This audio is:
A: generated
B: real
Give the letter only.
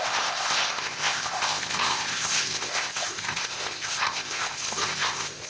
A